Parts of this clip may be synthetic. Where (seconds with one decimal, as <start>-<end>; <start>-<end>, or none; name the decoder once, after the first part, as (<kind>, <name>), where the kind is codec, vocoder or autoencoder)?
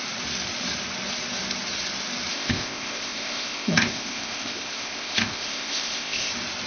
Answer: 2.3-6.3 (codec, ZipCodec)